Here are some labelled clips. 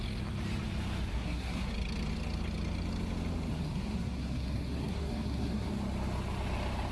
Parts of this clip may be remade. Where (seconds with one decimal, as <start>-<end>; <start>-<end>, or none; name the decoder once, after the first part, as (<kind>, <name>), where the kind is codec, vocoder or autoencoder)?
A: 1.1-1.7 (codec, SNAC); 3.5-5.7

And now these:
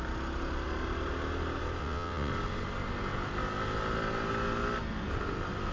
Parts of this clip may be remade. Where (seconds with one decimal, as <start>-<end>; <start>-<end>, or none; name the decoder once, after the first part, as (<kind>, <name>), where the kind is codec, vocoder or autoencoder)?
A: 1.8-2.3 (vocoder, WaveNeXt)

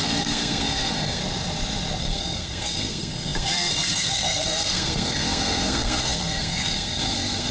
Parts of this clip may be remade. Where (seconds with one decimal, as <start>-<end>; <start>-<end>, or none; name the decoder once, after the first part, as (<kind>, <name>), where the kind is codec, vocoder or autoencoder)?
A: 0.0-1.2 (codec, SNAC); 2.0-7.5